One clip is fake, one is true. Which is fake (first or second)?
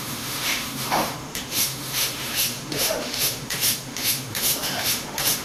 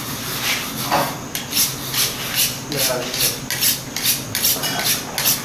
first